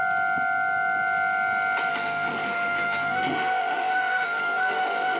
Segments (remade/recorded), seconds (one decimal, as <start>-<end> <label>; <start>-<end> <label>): 0.0-1.9 recorded; 1.9-5.2 remade